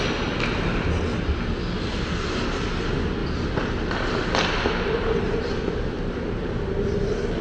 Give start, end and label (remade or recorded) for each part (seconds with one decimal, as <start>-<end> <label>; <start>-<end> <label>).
0.0-3.2 recorded; 3.2-6.4 remade; 6.4-7.4 recorded